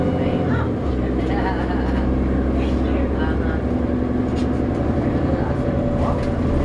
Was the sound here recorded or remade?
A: recorded